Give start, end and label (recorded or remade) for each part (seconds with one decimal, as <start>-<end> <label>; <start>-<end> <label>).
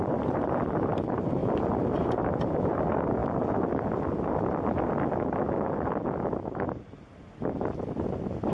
0.0-1.4 remade; 1.4-2.0 recorded; 2.0-3.2 remade; 3.2-8.1 recorded; 8.1-8.5 remade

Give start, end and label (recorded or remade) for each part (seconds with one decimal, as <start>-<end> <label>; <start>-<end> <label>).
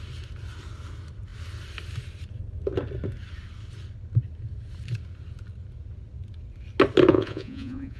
0.0-7.1 recorded; 7.1-8.0 remade